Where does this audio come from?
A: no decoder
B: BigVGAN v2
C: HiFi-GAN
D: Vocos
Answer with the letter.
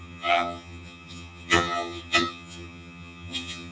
C